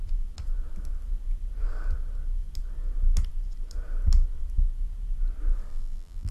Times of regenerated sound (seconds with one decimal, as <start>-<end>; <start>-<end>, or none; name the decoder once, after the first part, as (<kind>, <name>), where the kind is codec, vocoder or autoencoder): 5.7-6.3 (vocoder, BigVGAN v2)